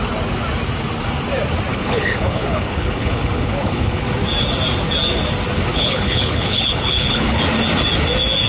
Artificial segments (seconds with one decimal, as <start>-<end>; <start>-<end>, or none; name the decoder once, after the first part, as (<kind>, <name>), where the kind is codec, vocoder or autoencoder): 1.7-4.0 (codec, HILCodec); 5.7-7.4